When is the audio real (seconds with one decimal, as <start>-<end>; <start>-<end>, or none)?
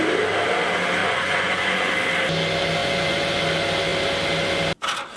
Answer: 0.0-1.0; 1.9-2.8; 3.4-5.2